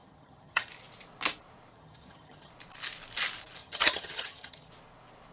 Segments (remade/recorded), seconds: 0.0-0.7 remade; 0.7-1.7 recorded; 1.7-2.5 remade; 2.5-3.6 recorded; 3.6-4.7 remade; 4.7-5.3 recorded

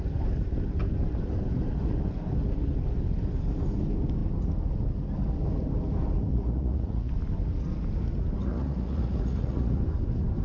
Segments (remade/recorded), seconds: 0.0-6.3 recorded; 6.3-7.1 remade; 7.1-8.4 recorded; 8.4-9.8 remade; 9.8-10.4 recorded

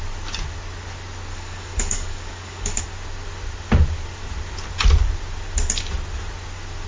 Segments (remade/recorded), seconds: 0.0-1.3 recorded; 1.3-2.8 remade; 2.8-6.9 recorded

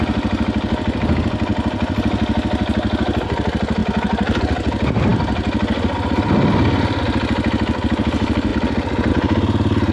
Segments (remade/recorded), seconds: 0.0-9.9 recorded